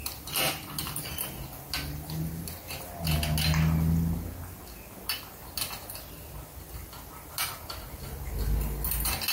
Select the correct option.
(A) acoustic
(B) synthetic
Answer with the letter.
A